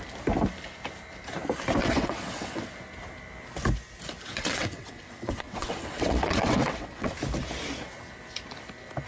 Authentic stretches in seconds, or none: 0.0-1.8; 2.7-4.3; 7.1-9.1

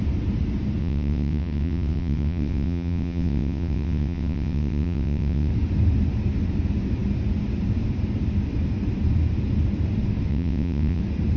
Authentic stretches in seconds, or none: 0.0-0.8; 5.5-10.3; 11.0-11.4